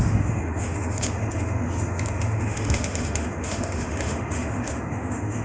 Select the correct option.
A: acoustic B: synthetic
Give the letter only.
B